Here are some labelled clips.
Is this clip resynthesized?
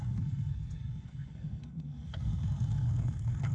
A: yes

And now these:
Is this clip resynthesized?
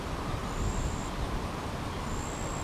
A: no